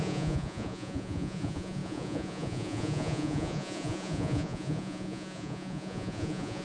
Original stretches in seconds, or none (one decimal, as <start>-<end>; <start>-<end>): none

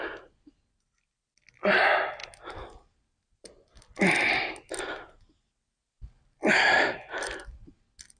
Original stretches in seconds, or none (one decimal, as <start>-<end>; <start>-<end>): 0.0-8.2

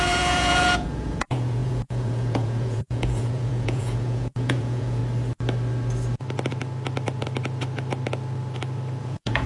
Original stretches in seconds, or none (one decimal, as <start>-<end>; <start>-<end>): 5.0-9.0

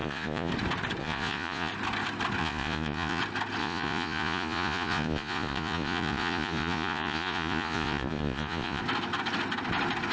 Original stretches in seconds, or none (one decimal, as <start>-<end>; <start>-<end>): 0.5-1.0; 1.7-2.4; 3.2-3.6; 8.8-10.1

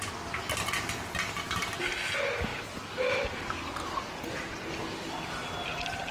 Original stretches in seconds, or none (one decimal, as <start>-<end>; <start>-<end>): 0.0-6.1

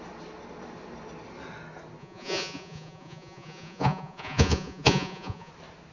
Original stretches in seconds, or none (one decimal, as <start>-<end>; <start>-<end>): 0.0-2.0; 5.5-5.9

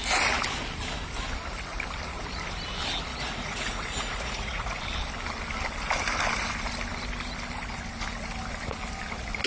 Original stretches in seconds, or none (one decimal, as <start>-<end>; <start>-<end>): 0.0-3.1; 4.8-9.5